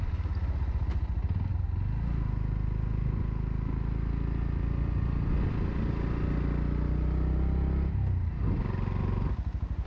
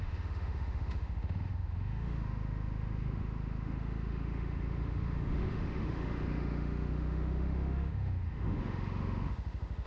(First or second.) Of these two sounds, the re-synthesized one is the second